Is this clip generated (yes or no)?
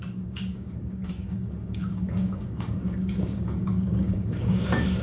yes